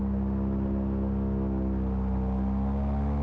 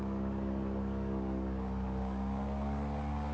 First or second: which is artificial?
second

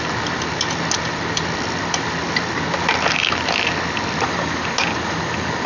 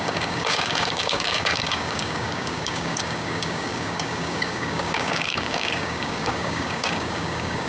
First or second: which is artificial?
second